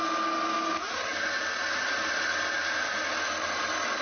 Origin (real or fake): real